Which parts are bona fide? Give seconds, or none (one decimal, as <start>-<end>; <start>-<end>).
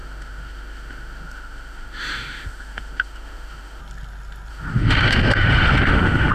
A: 3.8-4.5